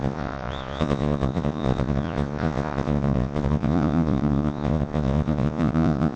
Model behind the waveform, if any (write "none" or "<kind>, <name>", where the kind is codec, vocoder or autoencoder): vocoder, Vocos